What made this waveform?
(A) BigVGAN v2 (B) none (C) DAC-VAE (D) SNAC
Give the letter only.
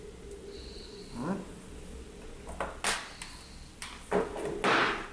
B